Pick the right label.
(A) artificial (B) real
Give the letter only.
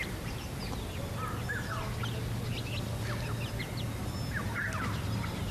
B